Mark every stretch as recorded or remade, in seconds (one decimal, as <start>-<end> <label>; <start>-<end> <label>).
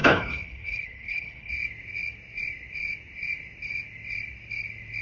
0.0-1.5 remade; 1.5-5.0 recorded